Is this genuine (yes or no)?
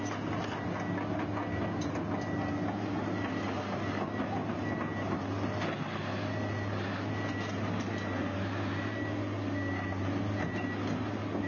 yes